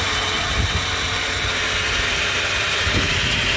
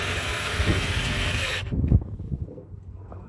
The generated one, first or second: second